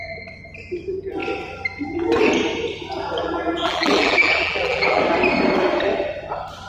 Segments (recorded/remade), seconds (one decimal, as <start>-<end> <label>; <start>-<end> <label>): 0.0-3.2 recorded; 3.2-5.0 remade; 5.0-6.7 recorded